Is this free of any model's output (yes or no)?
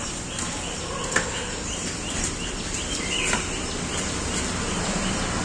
yes